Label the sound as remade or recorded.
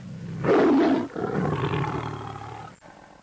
recorded